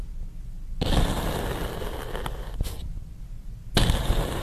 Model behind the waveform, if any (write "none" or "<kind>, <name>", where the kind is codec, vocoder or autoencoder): none